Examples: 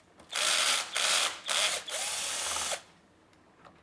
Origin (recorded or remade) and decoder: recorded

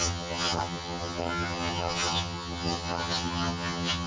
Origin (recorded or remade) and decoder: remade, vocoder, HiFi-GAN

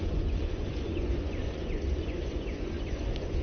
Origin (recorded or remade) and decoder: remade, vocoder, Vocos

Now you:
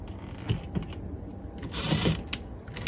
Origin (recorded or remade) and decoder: recorded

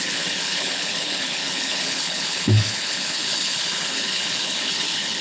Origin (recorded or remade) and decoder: remade, codec, HILCodec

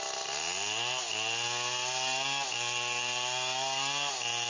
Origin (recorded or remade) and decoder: recorded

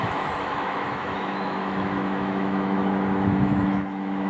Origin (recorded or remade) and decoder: remade, autoencoder, DAC-VAE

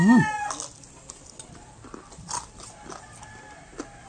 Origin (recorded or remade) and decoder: remade, vocoder, BigVGAN v2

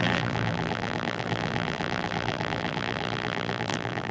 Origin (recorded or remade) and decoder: remade, vocoder, BigVGAN v2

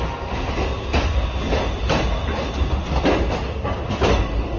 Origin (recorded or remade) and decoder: recorded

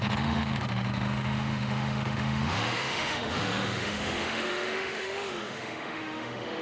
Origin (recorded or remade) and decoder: remade, autoencoder, DAC-VAE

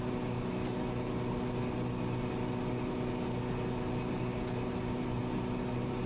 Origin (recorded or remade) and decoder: recorded